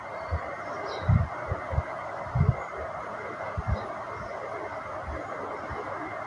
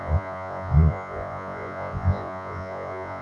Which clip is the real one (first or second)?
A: first